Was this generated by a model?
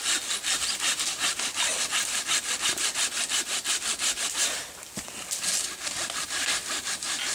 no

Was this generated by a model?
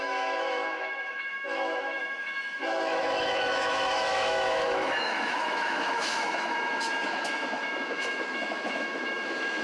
yes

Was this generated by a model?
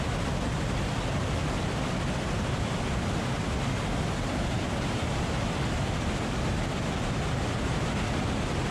no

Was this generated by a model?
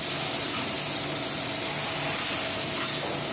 no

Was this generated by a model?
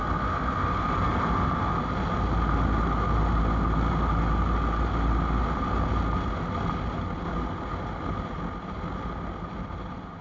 no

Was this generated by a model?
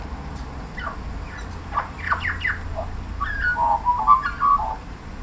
no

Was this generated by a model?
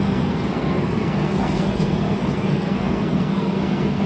yes